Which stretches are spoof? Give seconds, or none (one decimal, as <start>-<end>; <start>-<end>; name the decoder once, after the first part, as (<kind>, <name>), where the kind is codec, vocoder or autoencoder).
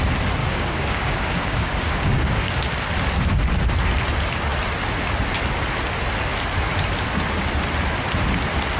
0.4-2.6 (codec, DAC)